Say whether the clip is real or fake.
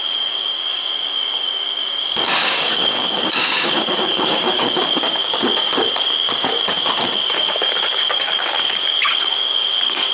fake